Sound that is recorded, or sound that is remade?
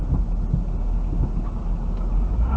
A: recorded